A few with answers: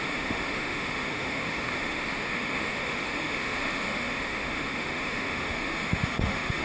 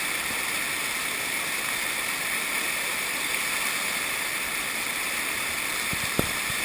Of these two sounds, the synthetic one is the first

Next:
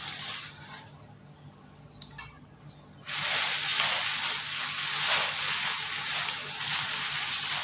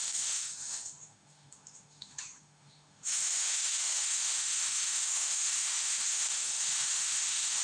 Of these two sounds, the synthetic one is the second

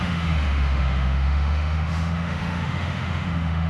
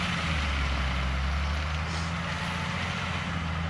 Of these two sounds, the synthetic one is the first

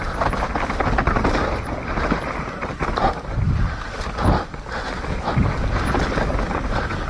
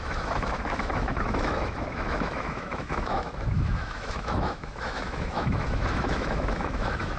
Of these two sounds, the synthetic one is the second